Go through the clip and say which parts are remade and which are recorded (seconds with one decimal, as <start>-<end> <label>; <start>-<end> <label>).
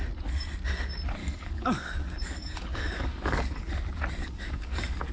0.0-1.2 recorded; 1.2-3.7 remade; 3.7-4.2 recorded; 4.2-5.1 remade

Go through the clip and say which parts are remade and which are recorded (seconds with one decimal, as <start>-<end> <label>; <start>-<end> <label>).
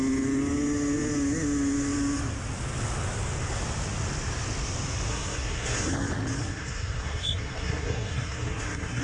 0.0-5.1 recorded; 5.1-5.9 remade; 5.9-6.4 recorded; 6.4-9.0 remade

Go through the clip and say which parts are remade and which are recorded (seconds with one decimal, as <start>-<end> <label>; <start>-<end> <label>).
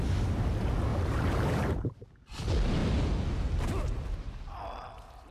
0.0-0.9 recorded; 0.9-1.9 remade; 1.9-5.3 recorded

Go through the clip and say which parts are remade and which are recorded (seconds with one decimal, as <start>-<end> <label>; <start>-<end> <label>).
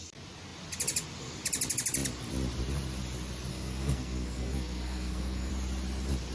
0.0-3.5 recorded; 3.5-5.5 remade; 5.5-6.3 recorded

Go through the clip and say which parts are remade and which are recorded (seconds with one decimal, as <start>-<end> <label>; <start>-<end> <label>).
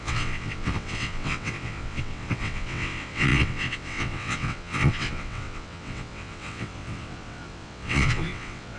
0.0-8.8 remade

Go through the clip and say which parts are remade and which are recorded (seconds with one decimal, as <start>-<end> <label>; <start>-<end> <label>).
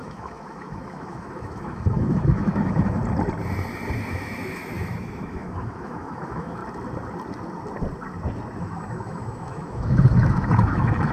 0.0-3.0 remade; 3.0-4.1 recorded; 4.1-6.6 remade; 6.6-8.6 recorded; 8.6-11.1 remade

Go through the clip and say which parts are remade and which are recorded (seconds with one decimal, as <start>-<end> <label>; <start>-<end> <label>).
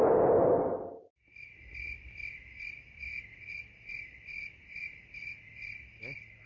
0.0-6.5 recorded